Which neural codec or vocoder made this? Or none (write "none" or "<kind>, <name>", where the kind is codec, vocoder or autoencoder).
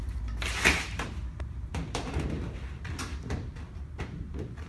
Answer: vocoder, BigVGAN v2